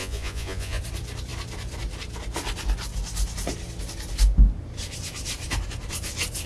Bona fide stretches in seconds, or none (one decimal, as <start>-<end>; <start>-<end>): 0.8-6.5